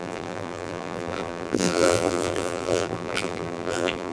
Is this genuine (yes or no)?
no